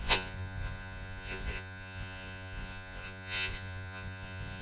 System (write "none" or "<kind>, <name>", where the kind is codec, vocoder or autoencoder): vocoder, Vocos